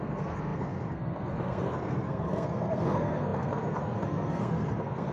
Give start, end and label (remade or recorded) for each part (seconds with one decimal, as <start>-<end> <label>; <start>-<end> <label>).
0.0-5.1 remade